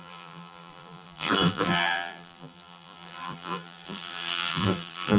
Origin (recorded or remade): remade